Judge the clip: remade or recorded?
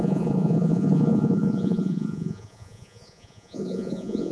remade